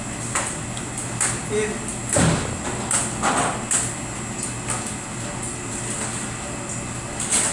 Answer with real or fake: real